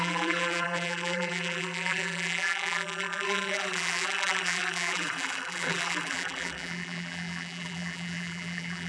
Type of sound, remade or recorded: remade